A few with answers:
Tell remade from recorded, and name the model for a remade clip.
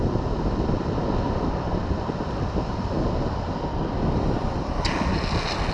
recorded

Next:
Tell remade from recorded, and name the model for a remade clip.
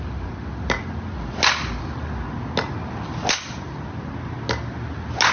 recorded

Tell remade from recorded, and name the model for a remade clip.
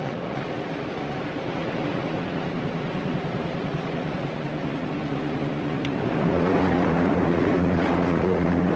remade, vocoder, Vocos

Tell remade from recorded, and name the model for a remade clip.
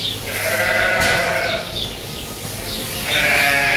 remade, codec, DAC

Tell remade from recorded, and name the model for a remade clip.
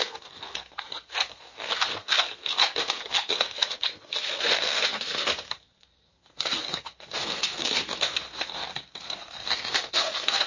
remade, codec, SNAC